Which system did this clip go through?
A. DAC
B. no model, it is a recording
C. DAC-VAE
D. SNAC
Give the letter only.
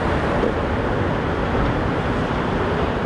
B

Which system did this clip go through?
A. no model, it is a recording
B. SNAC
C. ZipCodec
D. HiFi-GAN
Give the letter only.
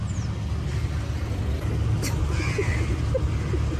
A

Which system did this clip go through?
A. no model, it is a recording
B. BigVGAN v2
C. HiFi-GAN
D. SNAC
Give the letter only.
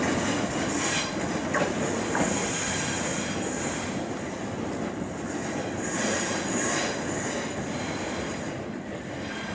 A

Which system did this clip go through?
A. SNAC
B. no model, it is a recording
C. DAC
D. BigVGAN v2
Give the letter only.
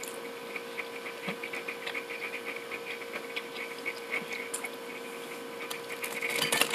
B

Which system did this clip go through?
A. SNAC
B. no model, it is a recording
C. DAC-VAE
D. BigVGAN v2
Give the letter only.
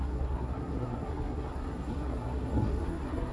A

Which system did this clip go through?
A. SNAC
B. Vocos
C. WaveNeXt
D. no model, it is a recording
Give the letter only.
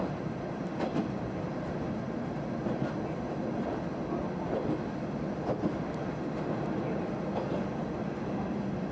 D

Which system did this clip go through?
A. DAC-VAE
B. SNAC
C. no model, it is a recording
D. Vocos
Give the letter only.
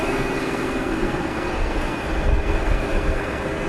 B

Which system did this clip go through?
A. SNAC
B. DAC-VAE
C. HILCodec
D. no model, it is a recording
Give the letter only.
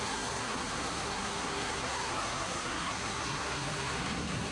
A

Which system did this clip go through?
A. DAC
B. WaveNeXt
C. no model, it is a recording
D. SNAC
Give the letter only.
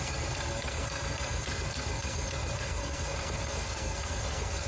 D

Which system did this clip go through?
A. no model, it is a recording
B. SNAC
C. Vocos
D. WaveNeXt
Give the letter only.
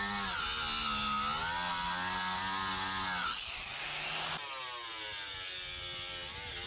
A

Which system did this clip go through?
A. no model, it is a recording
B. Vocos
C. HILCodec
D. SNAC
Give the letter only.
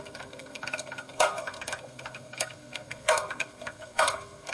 D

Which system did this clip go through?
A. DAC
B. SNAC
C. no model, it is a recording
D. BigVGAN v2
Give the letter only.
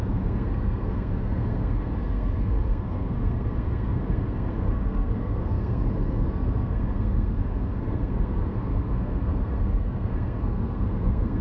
B